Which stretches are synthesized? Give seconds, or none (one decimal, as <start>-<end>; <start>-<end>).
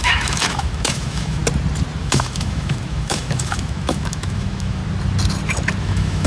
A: 0.0-1.4; 2.0-4.8; 5.8-6.3